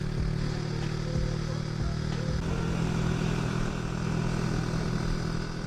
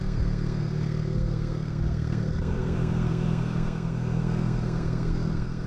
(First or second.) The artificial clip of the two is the second